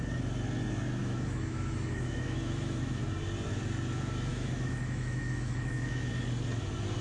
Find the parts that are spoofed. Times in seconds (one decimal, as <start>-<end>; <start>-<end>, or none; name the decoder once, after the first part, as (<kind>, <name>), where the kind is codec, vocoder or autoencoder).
1.0-3.0 (autoencoder, DAC-VAE); 4.3-6.1